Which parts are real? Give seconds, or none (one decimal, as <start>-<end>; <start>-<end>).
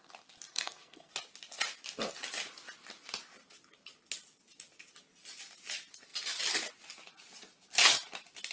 0.0-0.5; 1.1-8.5